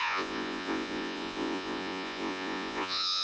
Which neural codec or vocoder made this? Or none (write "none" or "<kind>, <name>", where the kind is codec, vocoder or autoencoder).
vocoder, Vocos